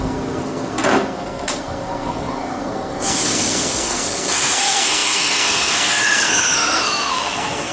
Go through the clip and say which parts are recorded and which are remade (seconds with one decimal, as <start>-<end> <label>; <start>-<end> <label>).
0.0-7.7 remade